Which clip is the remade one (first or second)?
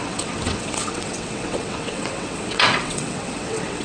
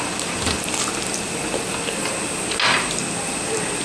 first